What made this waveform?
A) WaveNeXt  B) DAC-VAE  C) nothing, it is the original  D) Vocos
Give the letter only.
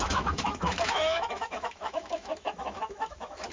B